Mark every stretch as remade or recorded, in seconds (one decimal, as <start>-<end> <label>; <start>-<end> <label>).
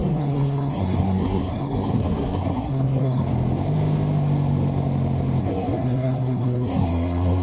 0.0-3.2 remade; 3.2-5.4 recorded; 5.4-7.4 remade